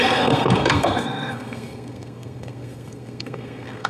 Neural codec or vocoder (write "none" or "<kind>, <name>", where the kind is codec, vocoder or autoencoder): codec, SNAC